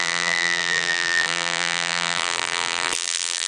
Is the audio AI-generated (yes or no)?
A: yes